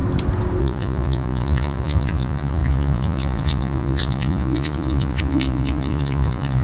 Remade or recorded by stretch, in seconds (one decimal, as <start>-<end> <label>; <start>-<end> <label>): 0.0-0.6 recorded; 0.6-6.6 remade